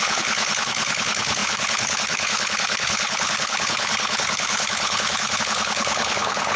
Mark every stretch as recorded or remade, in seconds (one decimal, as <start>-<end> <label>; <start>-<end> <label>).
0.0-6.6 remade